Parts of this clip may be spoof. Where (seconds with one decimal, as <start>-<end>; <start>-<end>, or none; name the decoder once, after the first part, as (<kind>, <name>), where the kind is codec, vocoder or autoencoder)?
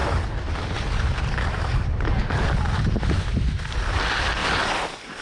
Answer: 4.4-5.2 (vocoder, BigVGAN v2)